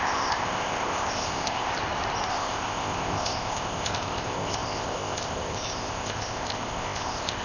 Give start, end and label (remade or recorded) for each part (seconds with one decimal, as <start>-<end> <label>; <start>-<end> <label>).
0.0-1.7 remade; 1.7-2.3 recorded; 2.3-7.4 remade